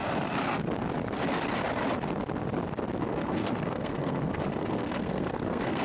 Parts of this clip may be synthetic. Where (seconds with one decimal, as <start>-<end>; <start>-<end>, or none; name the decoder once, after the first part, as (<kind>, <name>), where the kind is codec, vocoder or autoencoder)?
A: 3.1-5.8 (codec, SNAC)